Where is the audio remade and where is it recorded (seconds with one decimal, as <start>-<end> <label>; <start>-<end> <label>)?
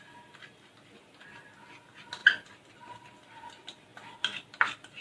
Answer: 0.0-5.0 recorded